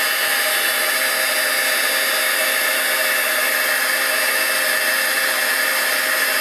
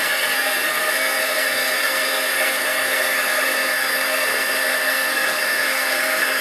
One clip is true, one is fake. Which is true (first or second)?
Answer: first